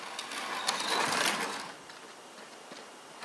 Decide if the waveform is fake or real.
real